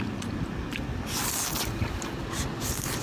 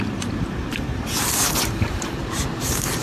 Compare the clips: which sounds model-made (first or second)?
second